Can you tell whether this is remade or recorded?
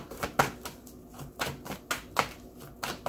recorded